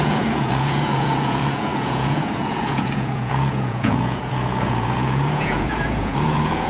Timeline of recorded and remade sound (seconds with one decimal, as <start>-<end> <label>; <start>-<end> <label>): 0.0-6.7 remade